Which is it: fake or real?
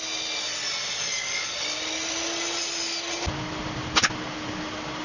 real